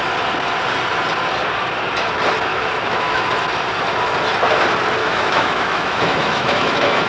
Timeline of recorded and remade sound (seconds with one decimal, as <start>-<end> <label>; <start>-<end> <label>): 0.0-2.5 recorded; 2.5-3.3 remade; 3.3-5.0 recorded; 5.0-7.1 remade